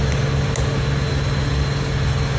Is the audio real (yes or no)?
yes